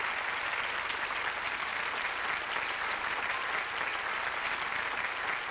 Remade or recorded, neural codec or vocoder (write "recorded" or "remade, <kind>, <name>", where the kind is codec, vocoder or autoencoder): recorded